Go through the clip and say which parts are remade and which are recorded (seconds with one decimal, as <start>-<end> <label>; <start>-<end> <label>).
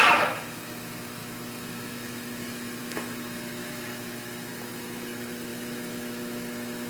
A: 0.0-6.9 remade